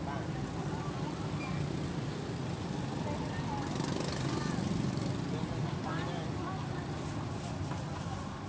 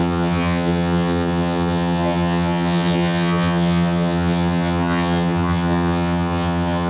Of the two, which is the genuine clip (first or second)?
first